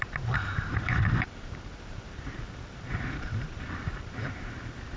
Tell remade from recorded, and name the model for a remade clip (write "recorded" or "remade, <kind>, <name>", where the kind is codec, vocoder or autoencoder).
remade, vocoder, BigVGAN v2